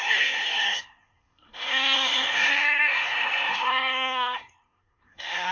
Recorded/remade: remade